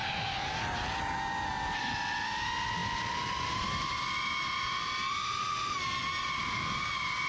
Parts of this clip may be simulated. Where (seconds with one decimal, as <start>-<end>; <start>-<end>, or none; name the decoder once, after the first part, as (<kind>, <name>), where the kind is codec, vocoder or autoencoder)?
none

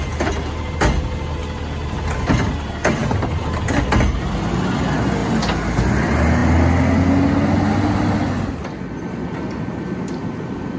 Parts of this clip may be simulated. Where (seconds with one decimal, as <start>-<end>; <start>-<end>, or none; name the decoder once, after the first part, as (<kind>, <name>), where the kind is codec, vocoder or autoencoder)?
none

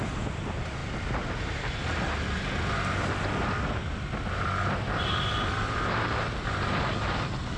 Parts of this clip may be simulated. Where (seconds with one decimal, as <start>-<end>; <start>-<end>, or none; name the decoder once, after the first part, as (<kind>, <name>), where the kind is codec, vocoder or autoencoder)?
none